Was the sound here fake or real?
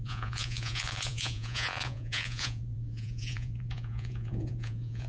fake